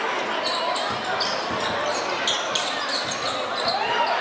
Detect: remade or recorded recorded